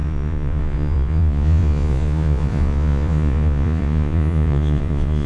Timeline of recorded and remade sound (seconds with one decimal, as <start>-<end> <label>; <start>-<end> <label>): 0.0-5.3 remade